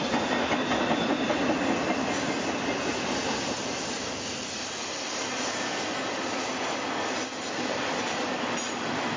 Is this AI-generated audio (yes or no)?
no